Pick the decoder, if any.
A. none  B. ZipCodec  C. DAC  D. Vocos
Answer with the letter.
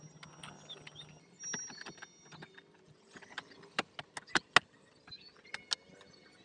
A